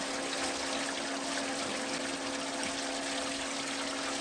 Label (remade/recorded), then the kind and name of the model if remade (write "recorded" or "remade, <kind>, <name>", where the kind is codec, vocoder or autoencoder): recorded